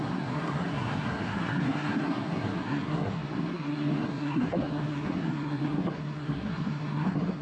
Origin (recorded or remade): remade